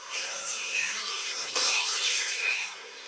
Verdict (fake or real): fake